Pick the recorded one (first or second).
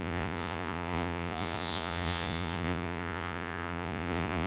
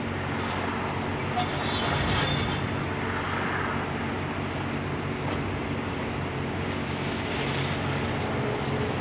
second